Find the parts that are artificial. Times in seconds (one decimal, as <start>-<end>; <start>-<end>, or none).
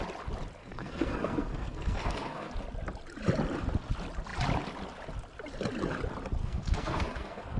0.6-2.5; 6.4-7.6